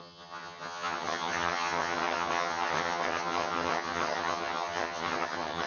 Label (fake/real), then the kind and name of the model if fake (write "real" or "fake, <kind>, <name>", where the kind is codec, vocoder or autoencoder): fake, vocoder, HiFi-GAN